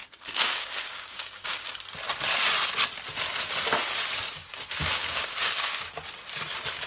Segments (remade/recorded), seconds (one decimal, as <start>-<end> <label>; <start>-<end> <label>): 0.0-1.7 remade; 1.7-4.8 recorded; 4.8-5.8 remade; 5.8-6.9 recorded